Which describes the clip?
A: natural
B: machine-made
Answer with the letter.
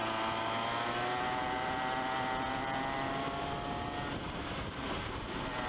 A